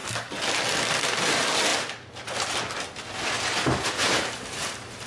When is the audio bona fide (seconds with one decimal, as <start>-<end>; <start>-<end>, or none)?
0.0-1.0; 1.7-4.0